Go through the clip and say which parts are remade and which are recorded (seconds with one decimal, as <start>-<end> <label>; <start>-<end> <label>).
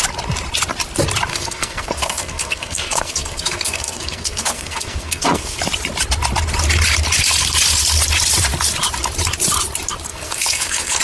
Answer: 0.0-1.3 recorded; 1.3-5.6 remade; 5.6-10.1 recorded; 10.1-11.0 remade